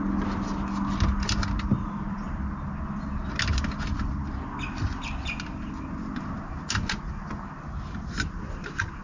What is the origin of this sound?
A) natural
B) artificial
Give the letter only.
A